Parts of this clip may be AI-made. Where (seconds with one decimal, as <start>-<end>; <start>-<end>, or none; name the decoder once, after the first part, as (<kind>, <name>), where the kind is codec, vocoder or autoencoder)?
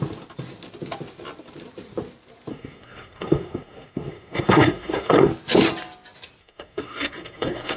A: 2.5-5.3 (codec, SNAC); 6.4-7.8